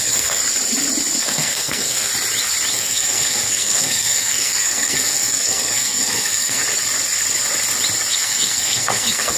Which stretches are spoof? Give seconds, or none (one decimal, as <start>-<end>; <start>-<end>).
0.0-0.4; 1.2-2.1; 2.7-6.6; 8.1-9.4